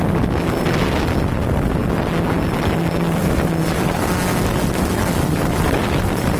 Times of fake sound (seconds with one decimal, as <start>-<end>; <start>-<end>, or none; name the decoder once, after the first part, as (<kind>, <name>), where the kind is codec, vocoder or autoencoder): none